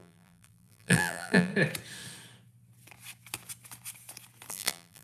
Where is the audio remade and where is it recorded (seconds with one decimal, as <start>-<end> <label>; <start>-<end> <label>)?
0.0-1.5 remade; 1.5-4.5 recorded; 4.5-5.0 remade